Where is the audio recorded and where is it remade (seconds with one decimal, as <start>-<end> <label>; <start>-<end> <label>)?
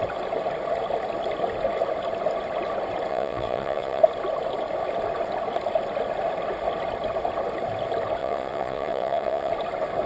0.0-3.1 recorded; 3.1-4.0 remade; 4.0-8.2 recorded; 8.2-9.5 remade; 9.5-10.1 recorded